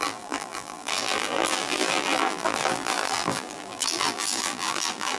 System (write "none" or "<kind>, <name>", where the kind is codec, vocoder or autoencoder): vocoder, BigVGAN v2